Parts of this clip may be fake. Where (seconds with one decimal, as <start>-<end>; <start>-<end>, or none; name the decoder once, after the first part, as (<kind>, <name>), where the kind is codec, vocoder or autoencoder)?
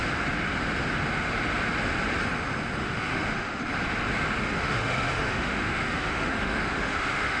2.8-3.6 (autoencoder, DAC-VAE); 4.4-7.4